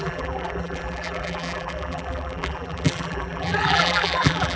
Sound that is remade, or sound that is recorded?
remade